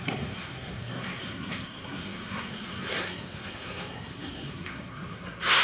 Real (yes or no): no